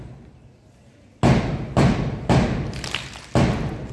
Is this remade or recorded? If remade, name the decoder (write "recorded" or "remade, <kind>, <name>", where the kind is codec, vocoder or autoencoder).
recorded